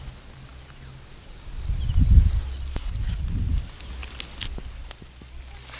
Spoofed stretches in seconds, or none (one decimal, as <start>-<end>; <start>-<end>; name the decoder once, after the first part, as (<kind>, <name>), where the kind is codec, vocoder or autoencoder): none